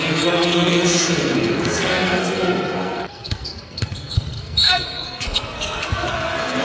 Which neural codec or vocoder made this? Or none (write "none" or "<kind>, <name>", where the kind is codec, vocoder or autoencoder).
codec, SNAC